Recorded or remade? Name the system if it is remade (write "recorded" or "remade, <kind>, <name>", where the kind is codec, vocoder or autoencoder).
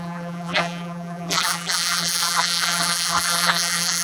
remade, vocoder, BigVGAN v2